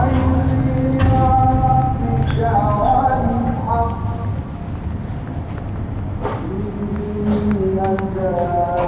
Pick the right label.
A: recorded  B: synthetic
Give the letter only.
A